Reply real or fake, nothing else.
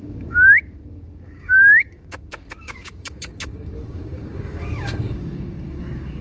fake